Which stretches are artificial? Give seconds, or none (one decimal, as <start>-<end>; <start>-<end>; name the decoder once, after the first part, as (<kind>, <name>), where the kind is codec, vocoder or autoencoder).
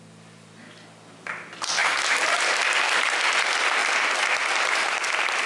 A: none